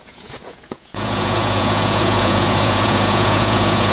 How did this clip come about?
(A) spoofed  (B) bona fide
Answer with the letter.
A